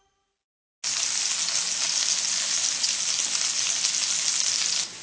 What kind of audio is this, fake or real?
real